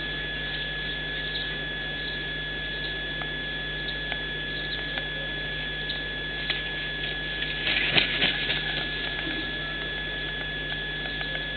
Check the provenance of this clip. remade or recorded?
recorded